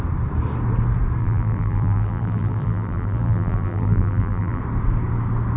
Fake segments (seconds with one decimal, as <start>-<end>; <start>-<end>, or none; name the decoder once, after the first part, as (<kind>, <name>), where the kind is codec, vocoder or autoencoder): 1.2-4.6 (vocoder, BigVGAN v2)